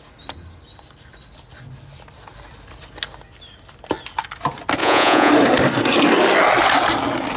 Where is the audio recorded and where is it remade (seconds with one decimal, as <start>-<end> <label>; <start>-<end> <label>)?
0.0-4.8 recorded; 4.8-5.3 remade; 5.3-7.4 recorded